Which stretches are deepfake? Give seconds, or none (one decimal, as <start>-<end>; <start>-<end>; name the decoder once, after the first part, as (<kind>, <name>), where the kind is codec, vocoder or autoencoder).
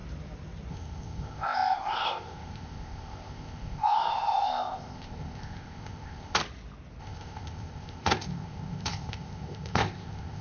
0.7-6.4 (codec, ZipCodec); 7.0-10.4